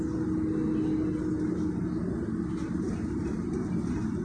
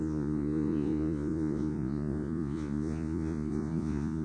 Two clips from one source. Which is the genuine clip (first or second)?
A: first